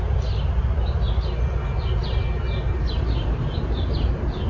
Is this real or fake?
real